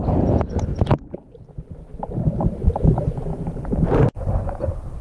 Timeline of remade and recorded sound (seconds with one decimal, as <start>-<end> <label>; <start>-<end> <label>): 0.0-1.9 recorded; 1.9-2.8 remade; 2.8-3.3 recorded; 3.3-5.0 remade